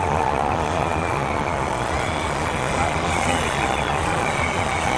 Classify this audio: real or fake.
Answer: fake